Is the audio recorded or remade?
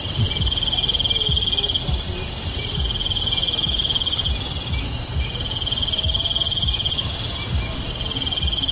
recorded